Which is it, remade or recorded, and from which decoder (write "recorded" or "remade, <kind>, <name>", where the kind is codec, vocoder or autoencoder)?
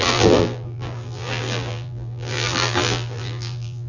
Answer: remade, vocoder, BigVGAN v2